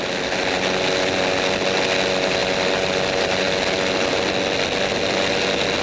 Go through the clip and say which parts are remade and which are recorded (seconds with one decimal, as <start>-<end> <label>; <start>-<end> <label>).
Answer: 0.0-5.8 recorded

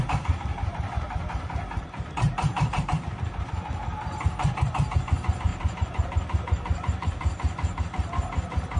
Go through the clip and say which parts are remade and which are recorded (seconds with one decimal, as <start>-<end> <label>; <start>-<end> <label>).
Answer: 0.0-0.5 recorded; 0.5-3.4 remade; 3.4-5.5 recorded; 5.5-7.8 remade; 7.8-8.8 recorded

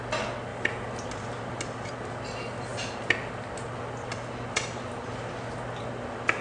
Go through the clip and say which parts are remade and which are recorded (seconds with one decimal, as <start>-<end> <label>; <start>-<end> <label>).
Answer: 0.0-6.4 recorded

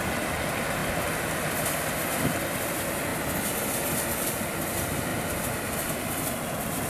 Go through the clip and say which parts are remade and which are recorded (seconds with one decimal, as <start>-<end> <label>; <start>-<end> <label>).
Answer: 0.0-0.8 remade; 0.8-2.2 recorded; 2.2-3.1 remade; 3.1-3.9 recorded; 3.9-6.9 remade

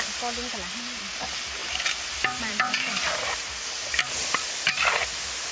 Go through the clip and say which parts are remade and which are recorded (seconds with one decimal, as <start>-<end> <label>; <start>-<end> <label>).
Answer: 0.0-1.6 recorded; 1.6-4.9 remade; 4.9-5.5 recorded